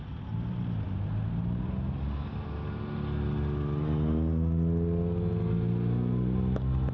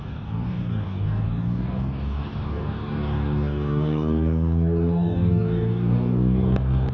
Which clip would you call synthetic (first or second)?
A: second